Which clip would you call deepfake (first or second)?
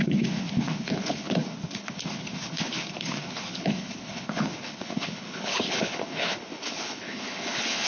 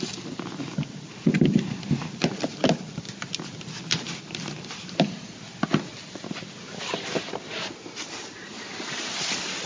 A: first